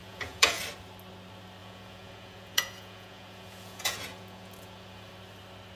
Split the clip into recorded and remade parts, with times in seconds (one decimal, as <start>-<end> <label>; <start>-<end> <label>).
0.0-0.6 remade; 0.6-1.6 recorded; 1.6-5.1 remade; 5.1-5.8 recorded